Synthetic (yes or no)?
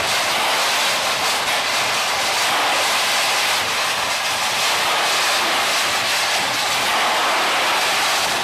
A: no